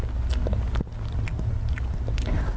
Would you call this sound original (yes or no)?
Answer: yes